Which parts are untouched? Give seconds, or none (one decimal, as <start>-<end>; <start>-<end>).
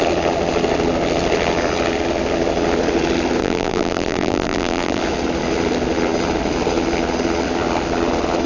0.0-3.4; 5.0-8.5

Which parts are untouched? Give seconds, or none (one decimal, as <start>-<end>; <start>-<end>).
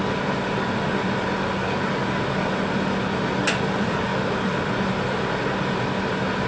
0.0-6.5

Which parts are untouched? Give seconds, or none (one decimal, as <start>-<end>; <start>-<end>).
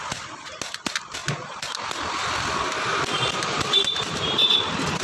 0.0-2.9; 4.6-5.0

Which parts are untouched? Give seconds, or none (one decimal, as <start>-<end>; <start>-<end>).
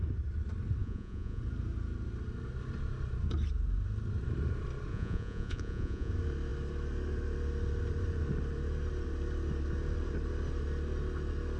0.0-0.8; 1.4-4.9; 6.1-11.6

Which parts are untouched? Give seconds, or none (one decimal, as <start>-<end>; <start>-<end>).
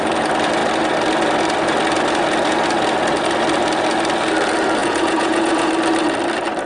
0.0-4.8; 5.7-6.7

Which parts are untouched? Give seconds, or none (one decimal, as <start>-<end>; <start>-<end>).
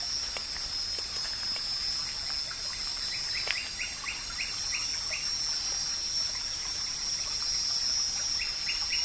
0.0-9.0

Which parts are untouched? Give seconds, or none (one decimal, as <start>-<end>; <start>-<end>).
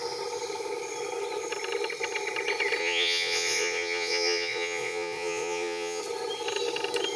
0.0-2.8; 6.0-7.2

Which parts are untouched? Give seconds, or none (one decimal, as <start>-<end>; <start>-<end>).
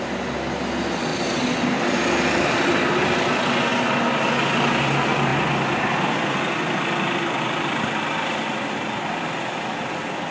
0.0-10.3